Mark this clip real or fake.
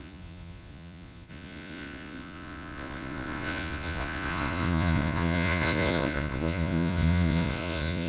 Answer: fake